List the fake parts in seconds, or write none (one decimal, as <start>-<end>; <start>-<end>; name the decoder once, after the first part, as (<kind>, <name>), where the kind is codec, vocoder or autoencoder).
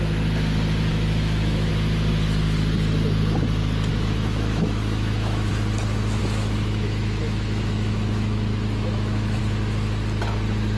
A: 0.9-1.7 (autoencoder, DAC-VAE); 3.9-5.5; 6.2-9.4